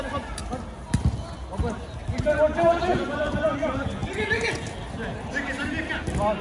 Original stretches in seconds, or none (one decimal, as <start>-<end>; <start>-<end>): 0.0-6.4